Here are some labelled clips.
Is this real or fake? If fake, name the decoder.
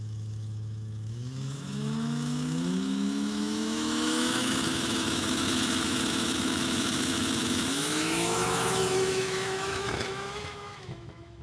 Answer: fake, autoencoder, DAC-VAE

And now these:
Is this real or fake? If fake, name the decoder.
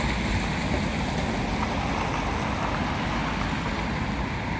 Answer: real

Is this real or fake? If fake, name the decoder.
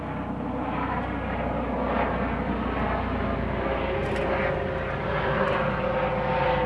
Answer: real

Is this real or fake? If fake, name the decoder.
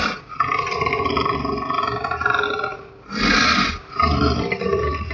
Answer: real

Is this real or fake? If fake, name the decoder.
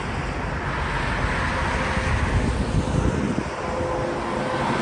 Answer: real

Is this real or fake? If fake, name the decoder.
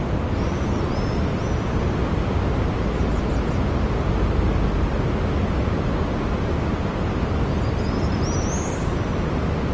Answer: real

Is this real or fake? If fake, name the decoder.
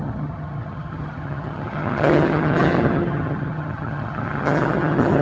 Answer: fake, vocoder, HiFi-GAN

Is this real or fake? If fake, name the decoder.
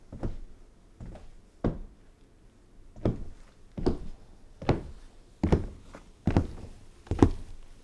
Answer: real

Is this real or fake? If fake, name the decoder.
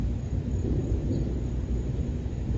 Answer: real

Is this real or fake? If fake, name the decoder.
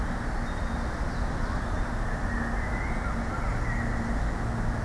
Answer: real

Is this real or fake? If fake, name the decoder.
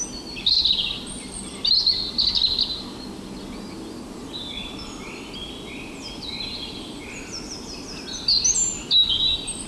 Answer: real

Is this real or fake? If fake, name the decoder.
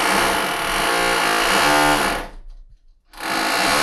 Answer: real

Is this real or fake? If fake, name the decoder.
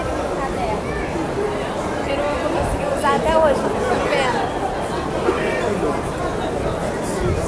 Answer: real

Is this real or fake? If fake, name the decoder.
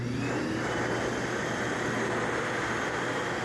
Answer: real